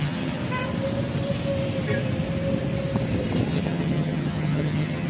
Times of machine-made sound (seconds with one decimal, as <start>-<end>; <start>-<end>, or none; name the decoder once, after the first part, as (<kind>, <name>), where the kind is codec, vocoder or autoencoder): 0.0-0.4 (vocoder, HiFi-GAN); 3.5-5.1